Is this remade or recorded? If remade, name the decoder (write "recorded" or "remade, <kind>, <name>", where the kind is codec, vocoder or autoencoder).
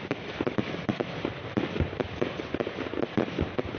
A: recorded